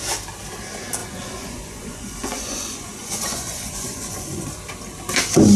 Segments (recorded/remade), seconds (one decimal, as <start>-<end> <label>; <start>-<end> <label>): 0.0-1.0 recorded; 1.0-4.4 remade; 4.4-5.6 recorded